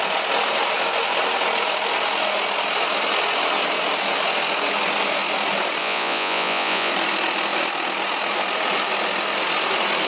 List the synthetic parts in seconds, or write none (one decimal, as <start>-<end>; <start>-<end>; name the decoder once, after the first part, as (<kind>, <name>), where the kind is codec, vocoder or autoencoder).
5.8-6.9 (vocoder, Vocos)